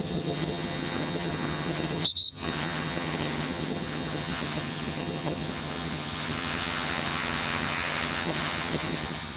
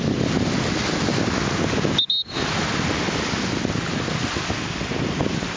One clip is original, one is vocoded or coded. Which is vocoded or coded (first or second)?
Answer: first